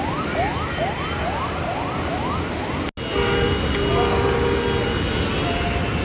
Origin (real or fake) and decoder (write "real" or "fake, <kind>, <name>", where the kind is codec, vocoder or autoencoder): real